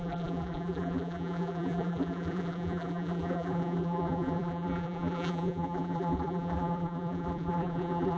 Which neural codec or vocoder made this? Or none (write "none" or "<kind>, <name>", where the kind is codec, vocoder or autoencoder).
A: vocoder, BigVGAN v2